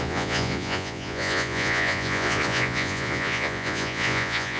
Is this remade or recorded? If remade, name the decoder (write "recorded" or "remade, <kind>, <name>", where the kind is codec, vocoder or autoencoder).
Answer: remade, vocoder, Vocos